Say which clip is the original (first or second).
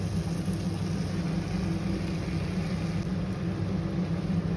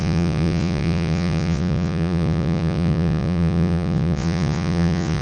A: first